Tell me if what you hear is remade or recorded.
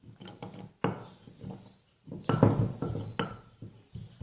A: recorded